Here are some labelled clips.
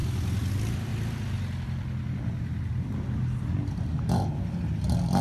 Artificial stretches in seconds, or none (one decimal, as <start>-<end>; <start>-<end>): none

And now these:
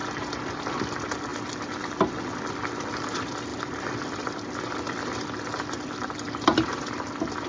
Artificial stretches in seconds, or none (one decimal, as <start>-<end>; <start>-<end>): none

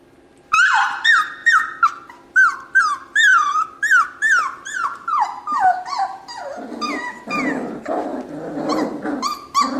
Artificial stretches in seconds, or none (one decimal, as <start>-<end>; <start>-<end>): 8.1-8.9